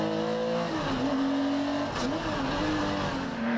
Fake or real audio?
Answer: real